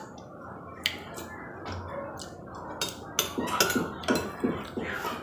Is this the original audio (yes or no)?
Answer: yes